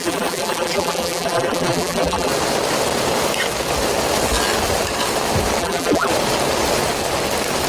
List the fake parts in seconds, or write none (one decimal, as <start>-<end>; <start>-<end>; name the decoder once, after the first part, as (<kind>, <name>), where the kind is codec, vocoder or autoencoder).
0.0-2.3 (vocoder, BigVGAN v2); 5.6-6.1